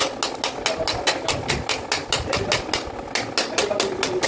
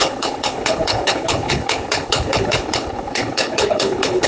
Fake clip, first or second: second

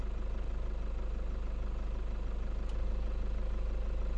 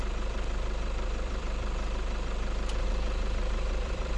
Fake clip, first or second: second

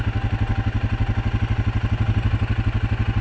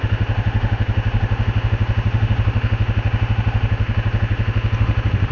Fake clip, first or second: second